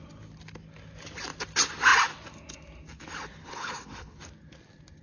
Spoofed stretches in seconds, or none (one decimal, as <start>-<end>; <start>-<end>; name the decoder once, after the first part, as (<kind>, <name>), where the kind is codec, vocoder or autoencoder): 3.4-4.2 (codec, HILCodec)